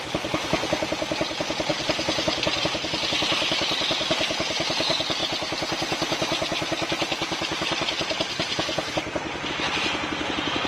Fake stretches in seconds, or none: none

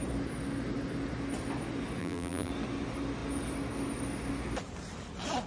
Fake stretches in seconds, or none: 2.0-2.5 (vocoder, BigVGAN v2)

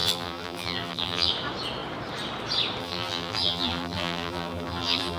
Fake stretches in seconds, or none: 0.0-1.3 (vocoder, BigVGAN v2); 2.8-5.2

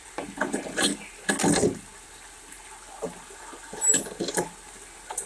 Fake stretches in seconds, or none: none

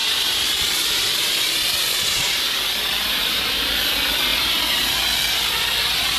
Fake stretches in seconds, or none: 0.0-3.7 (vocoder, BigVGAN v2); 4.3-5.0